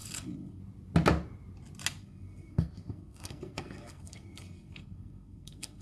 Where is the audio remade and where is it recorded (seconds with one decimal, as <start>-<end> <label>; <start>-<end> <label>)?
0.0-0.6 remade; 0.6-2.0 recorded; 2.0-5.8 remade